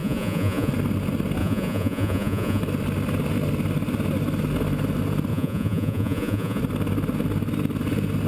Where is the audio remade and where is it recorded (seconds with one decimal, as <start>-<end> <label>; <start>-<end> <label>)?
0.0-0.7 remade; 0.7-1.4 recorded; 1.4-2.6 remade; 2.6-5.3 recorded; 5.3-6.6 remade; 6.6-8.3 recorded